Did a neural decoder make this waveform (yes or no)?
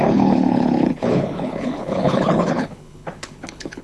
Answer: yes